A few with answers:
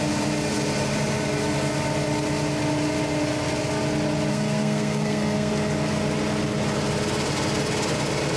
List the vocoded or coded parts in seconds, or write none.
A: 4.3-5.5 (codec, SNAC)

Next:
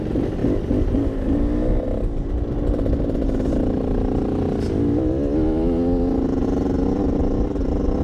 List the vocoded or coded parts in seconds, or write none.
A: none

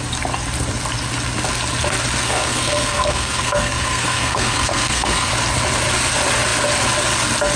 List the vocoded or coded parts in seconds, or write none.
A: 2.2-5.3 (codec, SNAC)

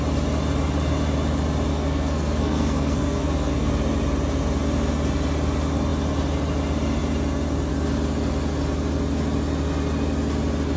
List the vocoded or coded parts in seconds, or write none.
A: 1.7-3.7 (codec, SNAC)

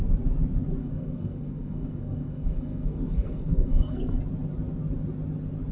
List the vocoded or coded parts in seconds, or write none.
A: 0.8-4.2 (codec, SNAC)

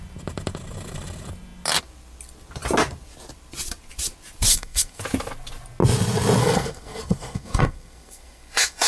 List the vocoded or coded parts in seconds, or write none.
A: 4.5-5.0 (codec, SNAC); 6.4-8.9

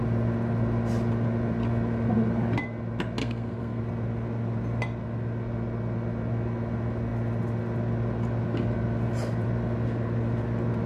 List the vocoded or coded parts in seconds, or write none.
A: 3.2-3.8 (codec, SNAC)